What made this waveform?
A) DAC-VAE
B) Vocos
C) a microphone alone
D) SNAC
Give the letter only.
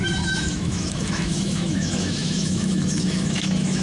A